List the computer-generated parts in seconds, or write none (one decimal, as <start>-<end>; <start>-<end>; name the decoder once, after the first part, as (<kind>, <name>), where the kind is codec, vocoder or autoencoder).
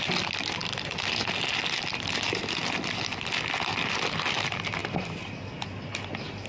none